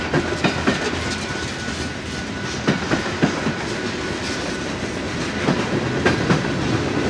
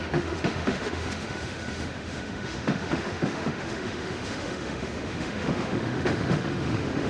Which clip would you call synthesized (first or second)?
second